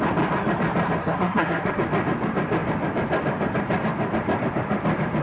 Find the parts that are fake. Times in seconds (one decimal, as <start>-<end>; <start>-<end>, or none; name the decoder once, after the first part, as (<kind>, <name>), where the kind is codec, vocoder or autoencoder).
1.0-1.8 (codec, SNAC)